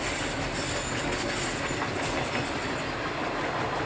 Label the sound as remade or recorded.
recorded